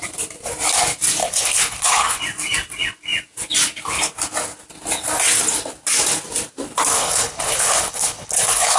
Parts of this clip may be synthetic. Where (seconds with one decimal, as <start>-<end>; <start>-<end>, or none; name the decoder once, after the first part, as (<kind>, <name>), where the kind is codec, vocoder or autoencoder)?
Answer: 1.2-2.2 (codec, HILCodec); 6.9-8.8